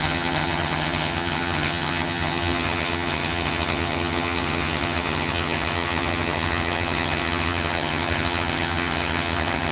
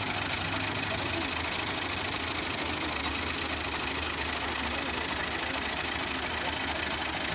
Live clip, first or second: second